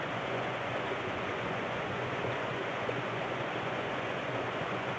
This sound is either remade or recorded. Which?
remade